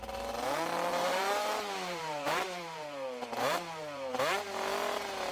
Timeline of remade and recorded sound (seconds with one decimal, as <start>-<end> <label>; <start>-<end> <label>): 0.0-0.9 recorded; 0.9-4.1 remade; 4.1-5.3 recorded